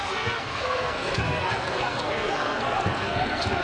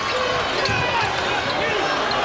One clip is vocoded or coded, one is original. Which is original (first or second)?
second